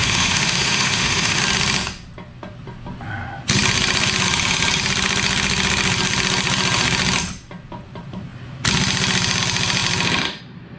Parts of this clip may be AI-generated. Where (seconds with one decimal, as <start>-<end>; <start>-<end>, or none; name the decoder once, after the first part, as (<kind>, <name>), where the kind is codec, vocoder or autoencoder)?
0.0-1.4 (autoencoder, DAC-VAE)